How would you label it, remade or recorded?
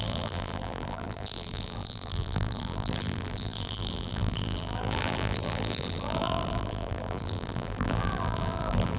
remade